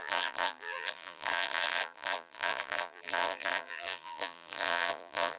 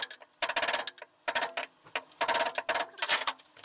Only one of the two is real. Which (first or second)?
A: second